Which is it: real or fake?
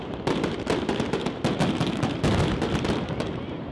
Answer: real